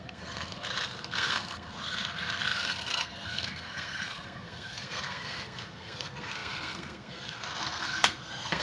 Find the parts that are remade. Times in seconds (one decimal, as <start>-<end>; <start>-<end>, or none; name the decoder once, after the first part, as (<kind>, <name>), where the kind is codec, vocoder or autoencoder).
0.0-8.6 (codec, SNAC)